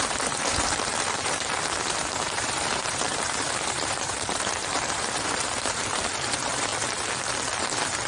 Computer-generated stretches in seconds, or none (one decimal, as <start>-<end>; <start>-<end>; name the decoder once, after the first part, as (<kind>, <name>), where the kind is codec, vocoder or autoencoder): 0.0-6.7 (vocoder, BigVGAN v2); 7.6-8.1